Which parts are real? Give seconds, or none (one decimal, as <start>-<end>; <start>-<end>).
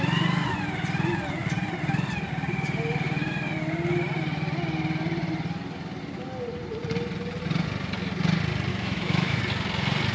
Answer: 0.0-8.7; 9.4-10.1